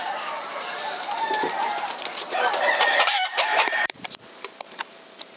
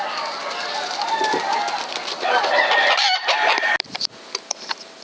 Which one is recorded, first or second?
second